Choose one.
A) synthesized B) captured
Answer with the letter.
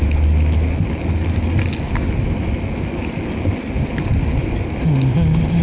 B